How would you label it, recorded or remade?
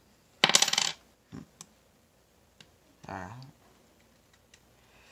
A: recorded